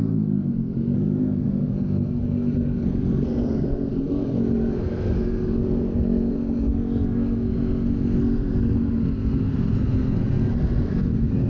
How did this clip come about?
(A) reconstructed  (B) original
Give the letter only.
A